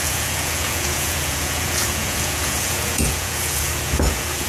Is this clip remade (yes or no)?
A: yes